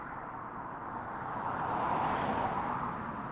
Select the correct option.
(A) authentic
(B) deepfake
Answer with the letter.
A